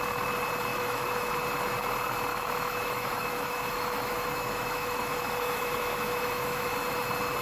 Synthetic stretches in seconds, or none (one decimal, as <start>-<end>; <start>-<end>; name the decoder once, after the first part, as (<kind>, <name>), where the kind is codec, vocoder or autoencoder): 0.7-1.3 (autoencoder, DAC-VAE); 2.3-6.7